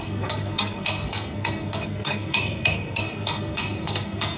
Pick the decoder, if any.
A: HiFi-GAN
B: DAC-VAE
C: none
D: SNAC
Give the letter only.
D